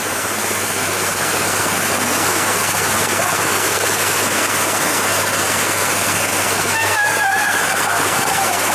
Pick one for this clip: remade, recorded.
remade